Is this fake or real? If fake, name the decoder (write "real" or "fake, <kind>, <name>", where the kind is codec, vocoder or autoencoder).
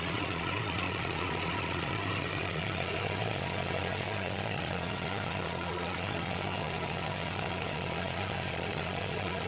fake, vocoder, Vocos